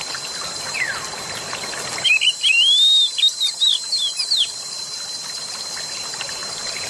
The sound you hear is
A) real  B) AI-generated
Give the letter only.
A